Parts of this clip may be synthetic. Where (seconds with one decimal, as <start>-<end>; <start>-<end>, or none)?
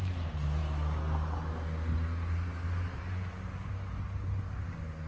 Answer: none